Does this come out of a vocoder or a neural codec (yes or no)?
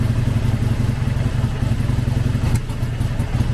no